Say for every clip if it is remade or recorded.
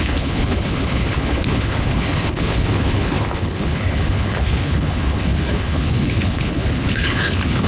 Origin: remade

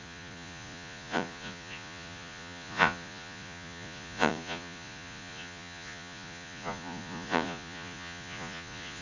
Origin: remade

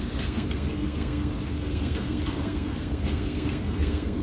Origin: remade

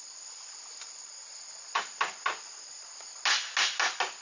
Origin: recorded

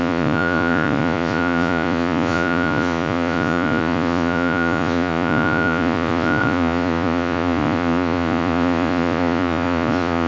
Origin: remade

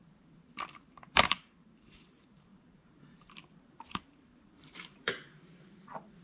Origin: remade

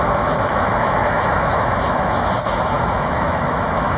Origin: remade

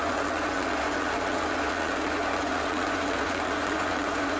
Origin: remade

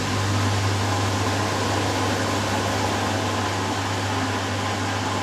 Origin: recorded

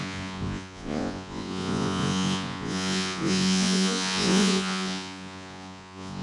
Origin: remade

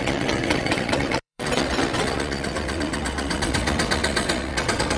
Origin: remade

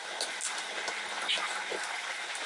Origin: recorded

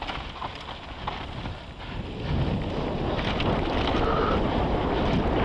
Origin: recorded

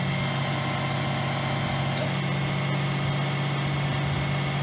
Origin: recorded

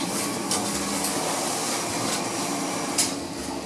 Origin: recorded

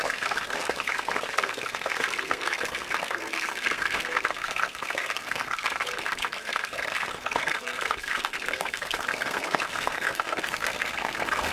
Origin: remade